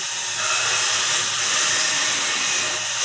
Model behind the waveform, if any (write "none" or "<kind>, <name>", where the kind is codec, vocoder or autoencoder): none